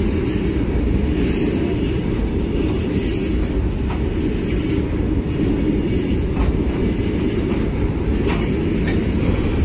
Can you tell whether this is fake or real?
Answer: real